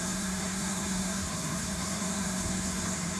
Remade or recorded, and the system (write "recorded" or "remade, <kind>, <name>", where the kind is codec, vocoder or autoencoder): remade, codec, SNAC